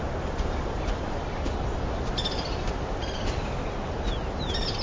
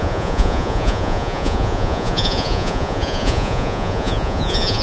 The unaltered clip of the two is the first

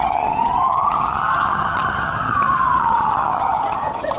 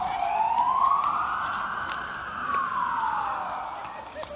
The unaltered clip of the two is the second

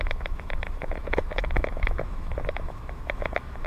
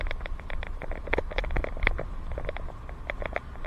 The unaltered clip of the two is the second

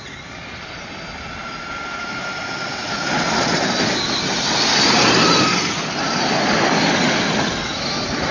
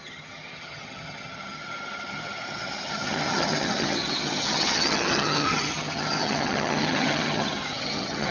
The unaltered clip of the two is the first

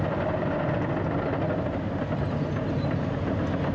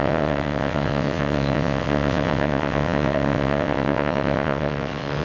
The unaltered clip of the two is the first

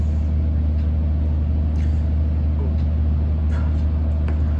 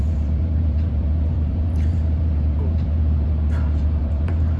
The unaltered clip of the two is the first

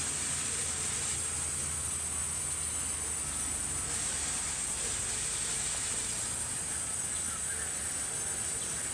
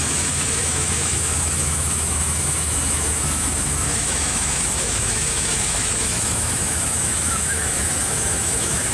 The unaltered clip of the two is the first